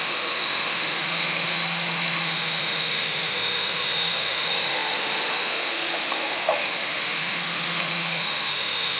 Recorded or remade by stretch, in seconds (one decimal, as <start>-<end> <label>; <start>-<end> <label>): 0.0-9.0 remade